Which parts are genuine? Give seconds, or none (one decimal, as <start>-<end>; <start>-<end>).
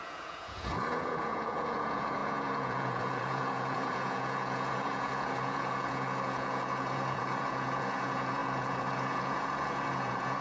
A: none